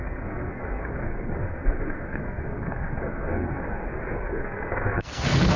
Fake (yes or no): yes